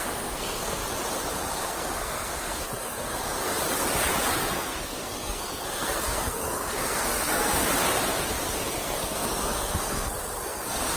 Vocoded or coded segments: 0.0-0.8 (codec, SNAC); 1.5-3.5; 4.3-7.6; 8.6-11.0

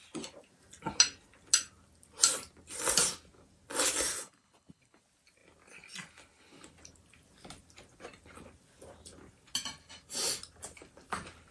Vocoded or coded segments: 4.1-5.0 (codec, HILCodec)